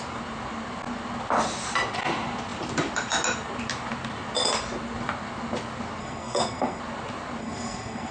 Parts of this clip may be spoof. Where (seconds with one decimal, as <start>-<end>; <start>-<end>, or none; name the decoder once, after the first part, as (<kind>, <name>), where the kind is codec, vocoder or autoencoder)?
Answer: 6.0-6.8 (codec, SNAC); 7.4-8.1